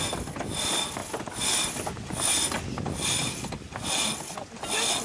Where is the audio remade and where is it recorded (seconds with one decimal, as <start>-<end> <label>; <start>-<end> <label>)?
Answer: 0.0-5.0 recorded